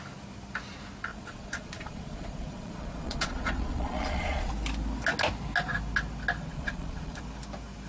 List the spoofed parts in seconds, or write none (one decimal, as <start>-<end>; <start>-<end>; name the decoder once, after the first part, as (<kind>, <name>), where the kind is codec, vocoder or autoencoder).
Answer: 1.1-4.5 (vocoder, Vocos); 6.5-7.2